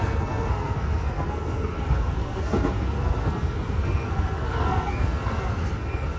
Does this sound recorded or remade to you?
remade